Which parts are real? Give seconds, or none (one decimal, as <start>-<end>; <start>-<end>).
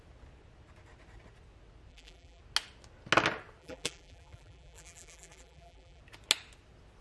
0.0-1.9; 2.4-3.6; 6.0-7.0